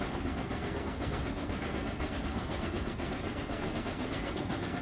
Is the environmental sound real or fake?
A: fake